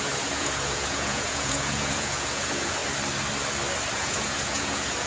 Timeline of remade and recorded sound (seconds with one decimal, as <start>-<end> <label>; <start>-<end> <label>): 0.0-2.8 remade; 2.8-3.9 recorded; 3.9-5.1 remade